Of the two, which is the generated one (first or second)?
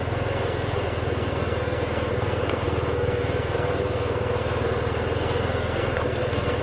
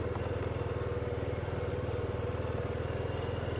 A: first